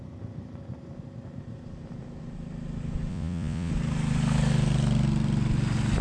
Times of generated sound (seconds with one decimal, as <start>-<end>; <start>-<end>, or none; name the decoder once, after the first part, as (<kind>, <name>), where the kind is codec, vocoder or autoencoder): 3.1-3.7 (vocoder, Vocos)